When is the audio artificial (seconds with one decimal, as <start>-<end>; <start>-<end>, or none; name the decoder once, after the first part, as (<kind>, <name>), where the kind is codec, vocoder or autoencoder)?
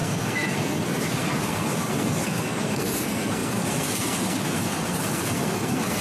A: 0.0-6.0 (codec, SNAC)